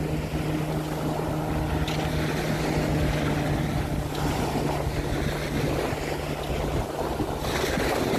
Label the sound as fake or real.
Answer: real